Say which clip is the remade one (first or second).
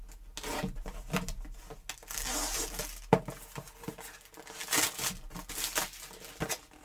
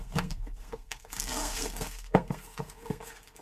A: second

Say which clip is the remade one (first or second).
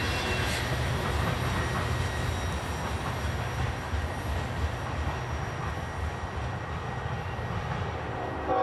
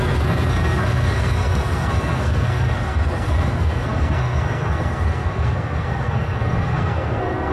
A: second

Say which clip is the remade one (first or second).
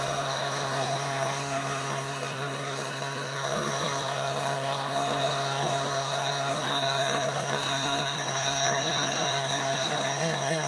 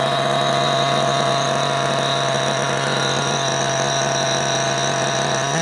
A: first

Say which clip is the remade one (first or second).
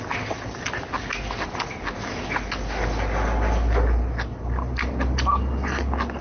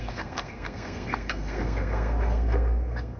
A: second